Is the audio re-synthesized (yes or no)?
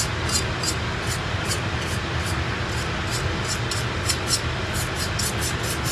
no